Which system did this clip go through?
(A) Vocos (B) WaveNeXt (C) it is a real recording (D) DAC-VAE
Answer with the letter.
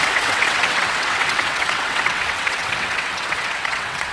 B